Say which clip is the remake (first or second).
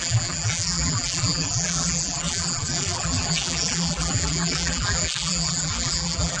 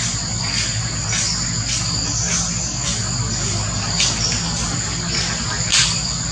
first